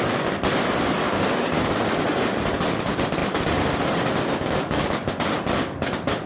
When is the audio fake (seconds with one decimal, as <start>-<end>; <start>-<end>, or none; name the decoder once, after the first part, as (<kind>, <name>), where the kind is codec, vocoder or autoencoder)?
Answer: none